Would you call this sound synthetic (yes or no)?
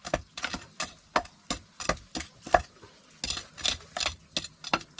no